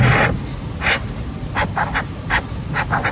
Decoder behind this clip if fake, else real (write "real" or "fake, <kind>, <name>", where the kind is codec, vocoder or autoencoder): real